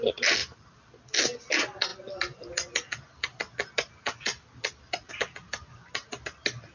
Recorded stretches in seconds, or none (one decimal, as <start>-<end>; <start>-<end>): 0.0-6.7

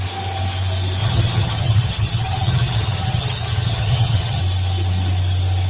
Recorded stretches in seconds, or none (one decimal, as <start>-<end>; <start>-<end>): 0.0-1.0; 4.4-5.7

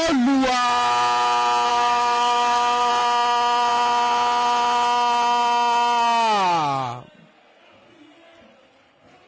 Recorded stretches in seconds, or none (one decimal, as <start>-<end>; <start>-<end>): 0.0-1.7; 2.9-9.3

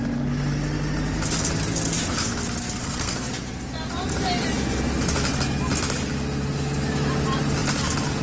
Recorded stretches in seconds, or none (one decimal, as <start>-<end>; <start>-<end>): 0.0-2.8; 3.3-8.2

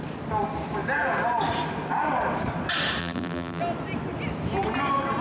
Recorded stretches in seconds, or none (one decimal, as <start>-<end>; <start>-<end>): 0.0-3.0; 3.6-5.2

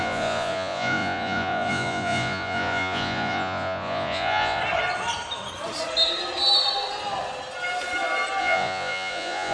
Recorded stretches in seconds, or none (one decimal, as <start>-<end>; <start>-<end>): 4.6-8.4

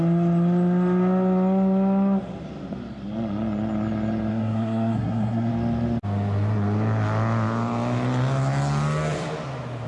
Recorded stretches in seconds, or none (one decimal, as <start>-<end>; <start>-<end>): 0.0-4.3; 5.5-9.9

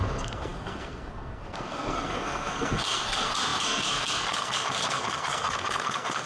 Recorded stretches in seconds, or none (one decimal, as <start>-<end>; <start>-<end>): none